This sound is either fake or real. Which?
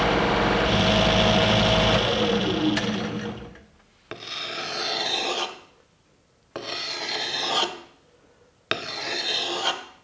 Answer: real